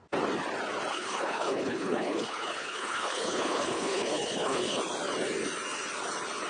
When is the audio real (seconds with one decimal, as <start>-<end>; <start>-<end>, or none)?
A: 0.0-0.9; 4.8-6.5